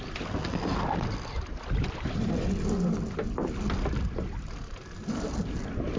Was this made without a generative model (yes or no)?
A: yes